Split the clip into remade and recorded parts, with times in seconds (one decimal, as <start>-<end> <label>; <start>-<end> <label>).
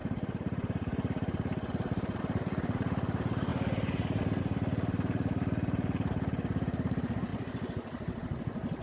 0.0-3.5 remade; 3.5-4.4 recorded; 4.4-7.3 remade; 7.3-8.8 recorded